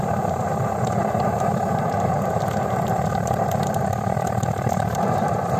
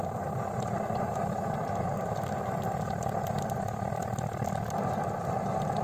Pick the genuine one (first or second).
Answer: second